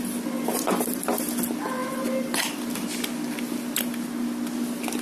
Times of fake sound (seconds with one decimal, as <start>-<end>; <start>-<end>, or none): 0.5-1.0